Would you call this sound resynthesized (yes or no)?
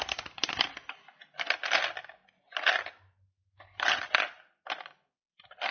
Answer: no